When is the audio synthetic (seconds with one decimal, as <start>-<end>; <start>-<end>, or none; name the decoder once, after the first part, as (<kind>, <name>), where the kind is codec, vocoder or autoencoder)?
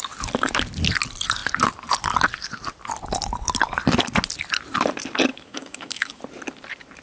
5.3-6.2 (autoencoder, DAC-VAE)